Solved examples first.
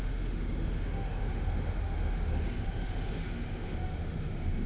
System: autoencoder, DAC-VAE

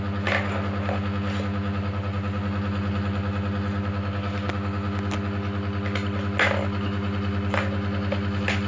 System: none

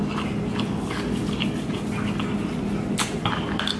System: none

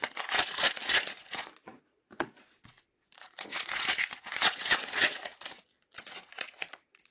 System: vocoder, Vocos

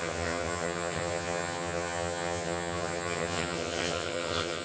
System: vocoder, HiFi-GAN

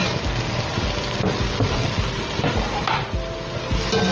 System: none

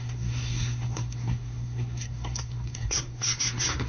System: codec, SNAC